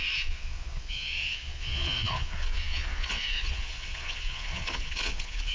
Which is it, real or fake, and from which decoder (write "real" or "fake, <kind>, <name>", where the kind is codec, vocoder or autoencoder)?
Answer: fake, vocoder, Vocos